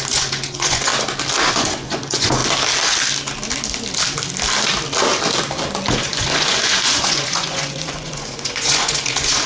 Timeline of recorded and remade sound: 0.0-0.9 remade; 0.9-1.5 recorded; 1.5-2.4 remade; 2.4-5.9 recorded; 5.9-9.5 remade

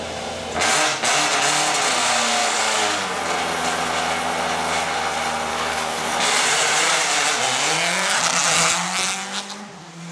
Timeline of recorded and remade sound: 0.0-2.4 recorded; 2.4-3.2 remade; 3.2-5.5 recorded; 5.5-6.1 remade; 6.1-10.1 recorded

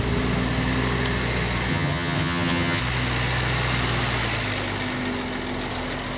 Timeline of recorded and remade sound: 0.0-1.7 recorded; 1.7-2.8 remade; 2.8-6.2 recorded

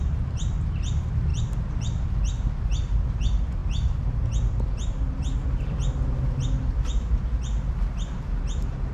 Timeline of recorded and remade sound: 0.0-8.9 recorded

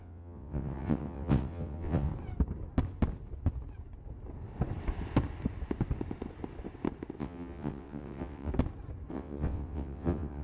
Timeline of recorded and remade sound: 0.0-2.1 remade; 2.1-7.2 recorded; 7.2-8.5 remade; 8.5-9.1 recorded; 9.1-10.4 remade

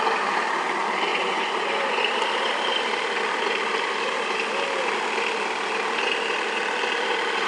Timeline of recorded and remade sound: 0.0-1.1 recorded; 1.1-2.0 remade; 2.0-7.5 recorded

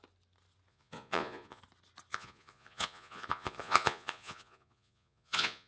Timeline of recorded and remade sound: 0.0-0.7 recorded; 0.7-1.6 remade; 1.6-2.1 recorded; 2.1-5.7 remade

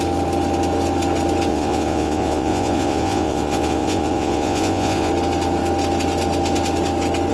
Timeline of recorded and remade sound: 0.0-1.5 recorded; 1.5-5.1 remade; 5.1-7.3 recorded